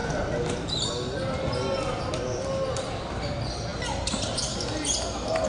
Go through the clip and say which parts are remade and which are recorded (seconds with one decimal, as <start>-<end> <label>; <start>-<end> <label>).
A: 0.0-5.5 recorded